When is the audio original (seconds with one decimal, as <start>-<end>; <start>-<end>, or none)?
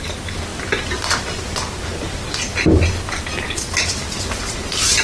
0.0-5.0